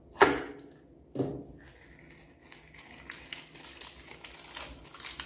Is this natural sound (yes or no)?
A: yes